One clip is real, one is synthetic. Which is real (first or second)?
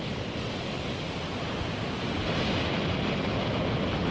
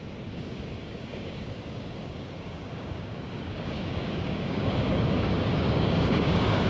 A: first